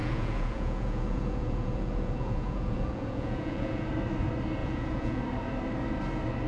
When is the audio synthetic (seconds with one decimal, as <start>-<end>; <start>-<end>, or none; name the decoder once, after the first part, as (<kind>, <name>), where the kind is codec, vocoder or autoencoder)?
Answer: 0.0-3.9 (vocoder, Vocos); 4.6-5.2

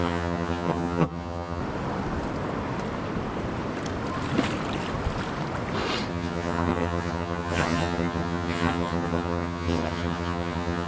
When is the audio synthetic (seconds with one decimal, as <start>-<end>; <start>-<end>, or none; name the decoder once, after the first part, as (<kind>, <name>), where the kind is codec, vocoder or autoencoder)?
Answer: 0.0-1.6 (vocoder, HiFi-GAN); 6.1-10.9

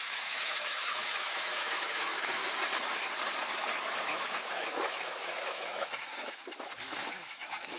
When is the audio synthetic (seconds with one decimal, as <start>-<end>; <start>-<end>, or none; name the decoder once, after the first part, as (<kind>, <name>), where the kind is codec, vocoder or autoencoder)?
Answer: 0.0-2.4 (autoencoder, DAC-VAE); 4.0-7.8

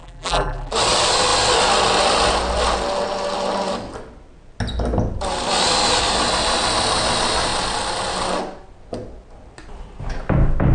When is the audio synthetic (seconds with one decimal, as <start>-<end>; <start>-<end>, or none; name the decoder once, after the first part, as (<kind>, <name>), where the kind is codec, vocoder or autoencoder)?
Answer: 0.0-0.7 (vocoder, BigVGAN v2)

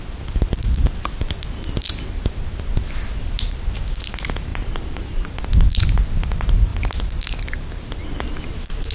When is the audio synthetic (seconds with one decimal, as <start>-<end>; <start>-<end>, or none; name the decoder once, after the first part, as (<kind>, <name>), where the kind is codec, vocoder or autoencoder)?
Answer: 4.5-5.4 (vocoder, BigVGAN v2)